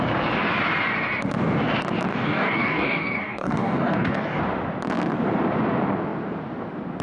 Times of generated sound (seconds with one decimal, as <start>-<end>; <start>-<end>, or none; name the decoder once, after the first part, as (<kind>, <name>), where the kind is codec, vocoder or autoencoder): 2.1-4.4 (codec, DAC)